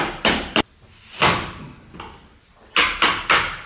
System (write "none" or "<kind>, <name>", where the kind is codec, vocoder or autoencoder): none